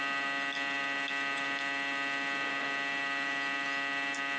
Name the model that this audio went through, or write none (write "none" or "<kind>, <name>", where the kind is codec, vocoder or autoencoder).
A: none